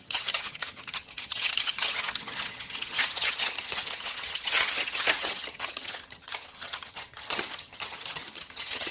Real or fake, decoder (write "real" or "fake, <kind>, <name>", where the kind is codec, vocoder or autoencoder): fake, vocoder, HiFi-GAN